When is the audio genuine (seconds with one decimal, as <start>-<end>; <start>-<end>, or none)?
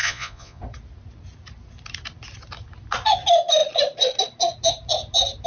0.6-5.5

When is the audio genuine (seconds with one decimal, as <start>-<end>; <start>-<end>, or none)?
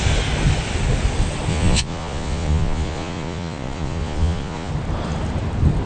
0.0-1.5; 4.7-5.9